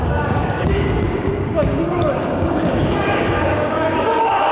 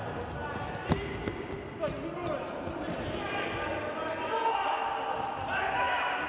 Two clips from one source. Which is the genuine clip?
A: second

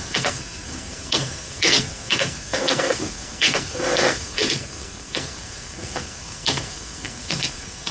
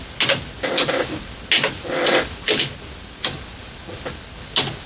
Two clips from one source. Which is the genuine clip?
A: second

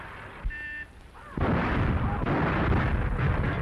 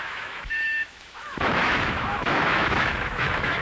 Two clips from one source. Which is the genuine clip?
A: first